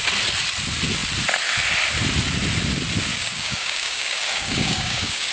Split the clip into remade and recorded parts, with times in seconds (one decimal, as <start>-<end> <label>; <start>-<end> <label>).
0.0-3.1 recorded; 3.1-5.3 remade